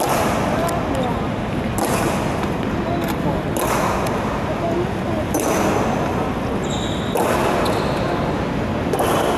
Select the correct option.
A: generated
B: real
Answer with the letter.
B